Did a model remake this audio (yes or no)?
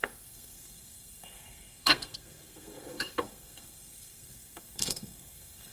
yes